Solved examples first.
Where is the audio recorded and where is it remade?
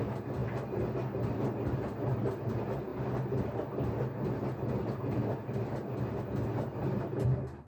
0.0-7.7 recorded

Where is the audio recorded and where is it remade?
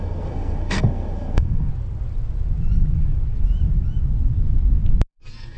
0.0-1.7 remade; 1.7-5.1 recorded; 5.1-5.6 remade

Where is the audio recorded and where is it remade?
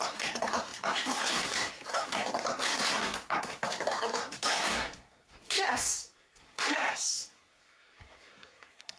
0.0-9.0 remade